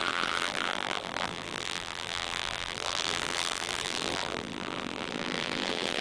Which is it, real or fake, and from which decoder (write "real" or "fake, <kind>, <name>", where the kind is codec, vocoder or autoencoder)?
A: fake, vocoder, BigVGAN v2